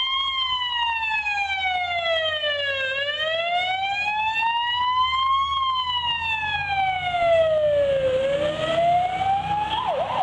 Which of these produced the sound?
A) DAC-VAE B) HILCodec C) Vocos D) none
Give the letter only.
D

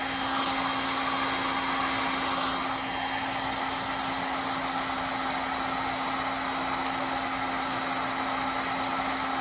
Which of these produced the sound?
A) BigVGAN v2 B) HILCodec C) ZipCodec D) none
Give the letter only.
D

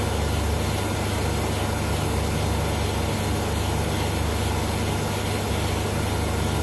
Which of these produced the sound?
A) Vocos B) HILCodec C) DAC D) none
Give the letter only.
D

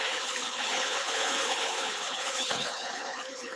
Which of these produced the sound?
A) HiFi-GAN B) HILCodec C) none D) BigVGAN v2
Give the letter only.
B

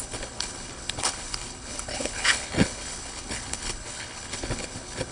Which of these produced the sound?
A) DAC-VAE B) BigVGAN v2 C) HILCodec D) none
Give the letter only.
C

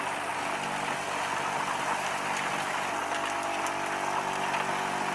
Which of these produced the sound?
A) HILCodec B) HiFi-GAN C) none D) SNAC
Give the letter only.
C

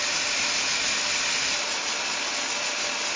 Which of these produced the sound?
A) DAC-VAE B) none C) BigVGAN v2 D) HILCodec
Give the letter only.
B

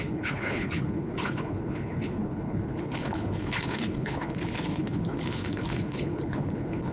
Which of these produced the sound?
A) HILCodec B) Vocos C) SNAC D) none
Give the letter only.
A